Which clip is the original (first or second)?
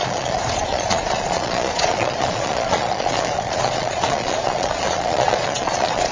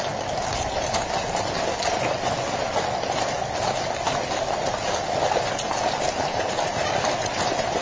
second